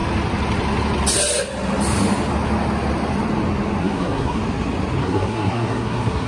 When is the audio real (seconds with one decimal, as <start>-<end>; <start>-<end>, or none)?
0.0-3.8; 4.4-5.0